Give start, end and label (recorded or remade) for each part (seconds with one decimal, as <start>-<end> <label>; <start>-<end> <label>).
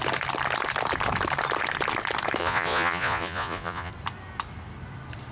0.0-2.4 recorded; 2.4-3.9 remade; 3.9-5.3 recorded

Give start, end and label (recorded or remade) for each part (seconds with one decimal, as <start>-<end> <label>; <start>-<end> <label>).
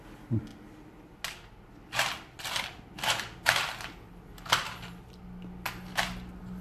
0.0-6.6 recorded